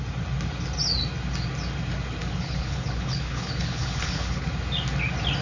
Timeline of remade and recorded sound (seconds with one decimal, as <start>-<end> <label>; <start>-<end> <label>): 0.0-2.2 recorded; 2.2-4.5 remade; 4.5-5.4 recorded